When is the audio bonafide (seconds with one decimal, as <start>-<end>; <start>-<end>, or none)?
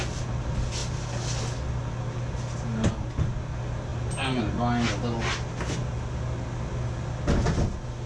0.0-3.9; 4.4-8.1